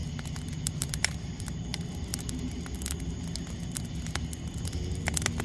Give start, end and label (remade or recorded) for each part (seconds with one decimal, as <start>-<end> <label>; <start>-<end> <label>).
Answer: 0.0-2.1 remade; 2.1-5.4 recorded